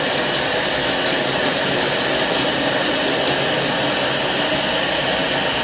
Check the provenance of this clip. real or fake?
real